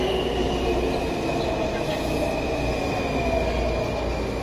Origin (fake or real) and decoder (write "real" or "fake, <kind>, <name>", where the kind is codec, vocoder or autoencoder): real